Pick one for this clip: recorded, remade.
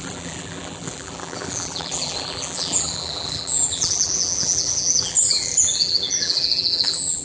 remade